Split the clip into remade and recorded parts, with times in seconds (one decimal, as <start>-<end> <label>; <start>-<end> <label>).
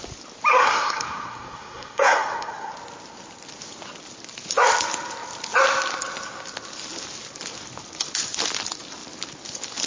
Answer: 0.0-0.5 recorded; 0.5-2.7 remade; 2.7-9.9 recorded